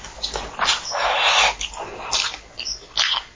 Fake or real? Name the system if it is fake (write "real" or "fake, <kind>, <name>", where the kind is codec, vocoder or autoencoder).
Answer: real